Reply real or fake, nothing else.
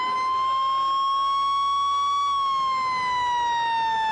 real